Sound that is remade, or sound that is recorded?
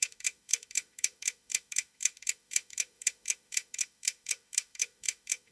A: remade